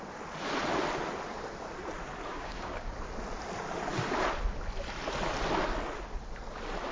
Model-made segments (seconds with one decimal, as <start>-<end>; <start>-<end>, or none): 2.3-2.9